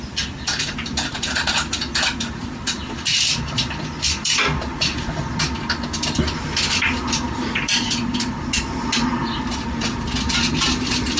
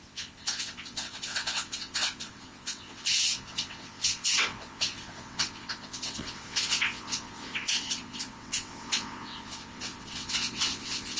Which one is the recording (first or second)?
first